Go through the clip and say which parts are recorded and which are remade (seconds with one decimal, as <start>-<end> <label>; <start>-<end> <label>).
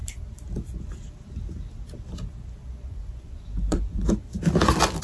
0.0-2.6 recorded; 2.6-4.0 remade; 4.0-5.0 recorded